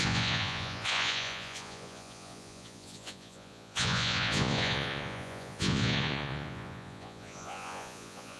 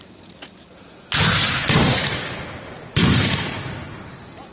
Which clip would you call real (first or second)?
second